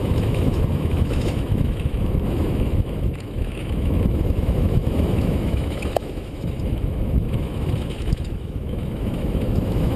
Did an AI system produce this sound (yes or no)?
yes